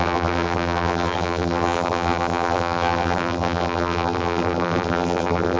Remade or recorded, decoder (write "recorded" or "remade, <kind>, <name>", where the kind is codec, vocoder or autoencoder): remade, vocoder, BigVGAN v2